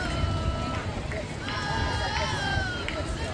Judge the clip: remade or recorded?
remade